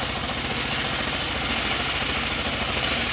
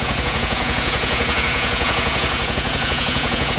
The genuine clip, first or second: first